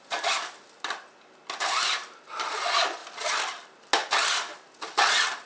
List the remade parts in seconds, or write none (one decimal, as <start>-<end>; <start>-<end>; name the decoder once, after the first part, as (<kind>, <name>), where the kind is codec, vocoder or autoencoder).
none